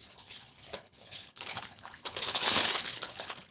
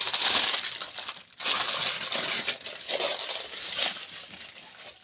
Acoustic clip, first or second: second